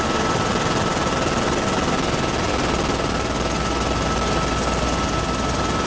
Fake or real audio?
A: real